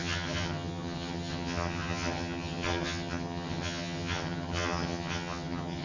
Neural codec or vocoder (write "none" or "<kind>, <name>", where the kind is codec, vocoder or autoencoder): vocoder, HiFi-GAN